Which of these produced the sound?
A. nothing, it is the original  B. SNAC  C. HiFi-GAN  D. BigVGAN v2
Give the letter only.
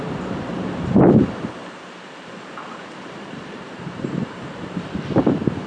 D